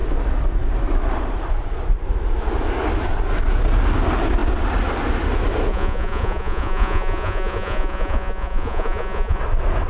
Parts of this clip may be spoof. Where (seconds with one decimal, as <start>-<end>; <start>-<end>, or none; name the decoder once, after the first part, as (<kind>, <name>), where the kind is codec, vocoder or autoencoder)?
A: 5.7-9.4 (vocoder, Vocos)